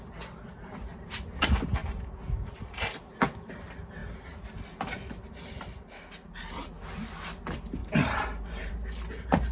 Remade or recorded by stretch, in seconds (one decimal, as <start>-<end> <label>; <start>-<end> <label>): 0.0-1.8 recorded; 1.8-3.1 remade; 3.1-7.8 recorded; 7.8-8.7 remade; 8.7-9.5 recorded